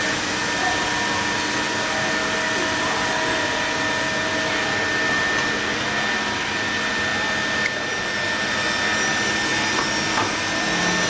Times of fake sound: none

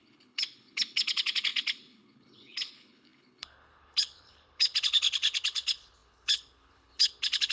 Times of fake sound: 0.0-7.5 (codec, HILCodec)

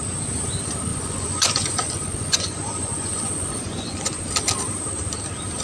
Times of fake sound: 0.9-4.3 (vocoder, Vocos)

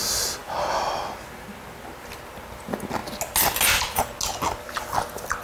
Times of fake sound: none

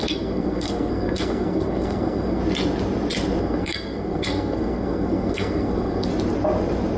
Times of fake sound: 0.0-2.4 (codec, SNAC); 3.4-6.1

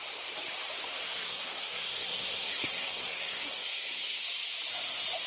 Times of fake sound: 1.0-4.2 (codec, SNAC)